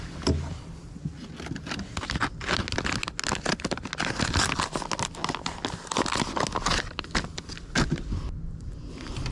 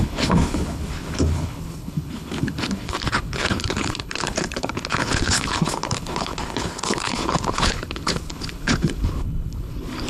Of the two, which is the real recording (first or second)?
first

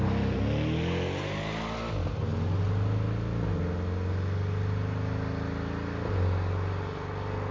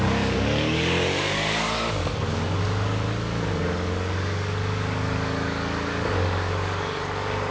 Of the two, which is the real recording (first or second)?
first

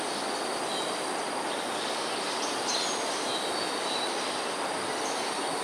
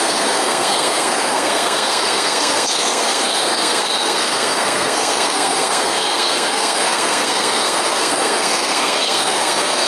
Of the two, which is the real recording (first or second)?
first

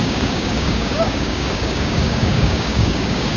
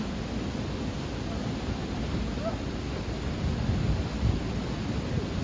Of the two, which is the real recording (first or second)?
second